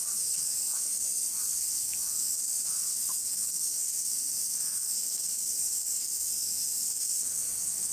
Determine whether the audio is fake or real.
fake